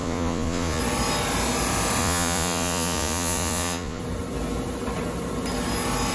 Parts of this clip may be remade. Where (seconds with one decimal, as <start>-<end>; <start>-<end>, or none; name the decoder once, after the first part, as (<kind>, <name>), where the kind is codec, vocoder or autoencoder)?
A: 0.0-0.8 (vocoder, Vocos); 2.0-4.0